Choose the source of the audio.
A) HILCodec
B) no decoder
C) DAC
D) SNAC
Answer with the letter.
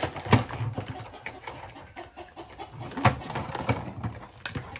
B